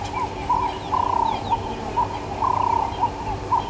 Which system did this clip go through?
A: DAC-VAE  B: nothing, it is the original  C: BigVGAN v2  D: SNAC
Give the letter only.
B